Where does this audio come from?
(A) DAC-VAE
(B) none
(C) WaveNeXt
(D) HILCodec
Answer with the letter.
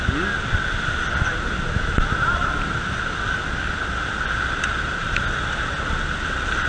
B